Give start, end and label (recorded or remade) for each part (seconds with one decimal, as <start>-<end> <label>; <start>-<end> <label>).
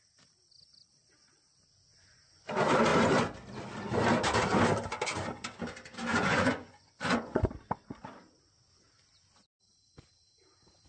0.0-1.9 recorded; 1.9-2.5 remade; 2.5-6.1 recorded; 6.1-7.5 remade; 7.5-10.9 recorded